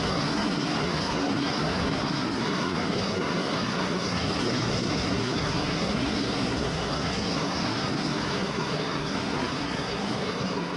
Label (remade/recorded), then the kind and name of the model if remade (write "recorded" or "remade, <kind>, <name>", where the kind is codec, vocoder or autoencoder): remade, codec, SNAC